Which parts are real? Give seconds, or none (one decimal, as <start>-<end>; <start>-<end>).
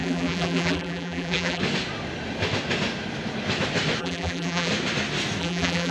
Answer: 1.6-4.0; 4.7-5.4